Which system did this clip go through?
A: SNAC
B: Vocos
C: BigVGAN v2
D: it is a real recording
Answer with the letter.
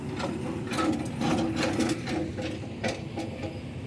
D